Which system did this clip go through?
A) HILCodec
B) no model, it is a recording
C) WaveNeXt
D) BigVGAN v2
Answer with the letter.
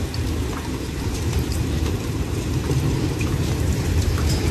D